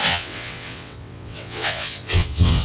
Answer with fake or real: fake